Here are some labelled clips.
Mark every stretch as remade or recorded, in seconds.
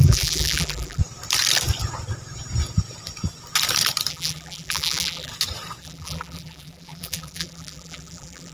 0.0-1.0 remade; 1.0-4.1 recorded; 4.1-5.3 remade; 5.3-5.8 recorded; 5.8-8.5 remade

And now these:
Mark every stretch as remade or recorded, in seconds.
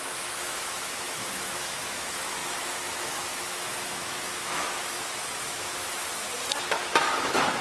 0.0-4.8 remade; 4.8-5.5 recorded; 5.5-6.1 remade; 6.1-6.7 recorded; 6.7-7.6 remade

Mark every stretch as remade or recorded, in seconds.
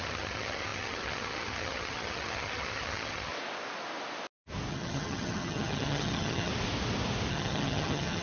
0.0-3.3 remade; 3.3-4.7 recorded; 4.7-6.5 remade; 6.5-7.3 recorded; 7.3-8.2 remade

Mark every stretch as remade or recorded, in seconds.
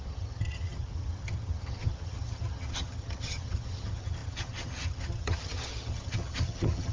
0.0-6.9 remade